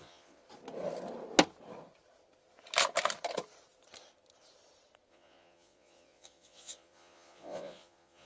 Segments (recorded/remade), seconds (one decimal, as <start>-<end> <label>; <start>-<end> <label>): 0.0-0.4 remade; 0.4-5.1 recorded; 5.1-8.3 remade